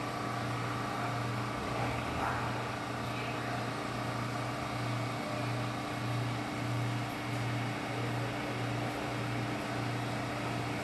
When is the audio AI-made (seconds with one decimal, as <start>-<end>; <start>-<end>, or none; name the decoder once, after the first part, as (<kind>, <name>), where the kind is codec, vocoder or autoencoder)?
1.3-2.3 (codec, DAC)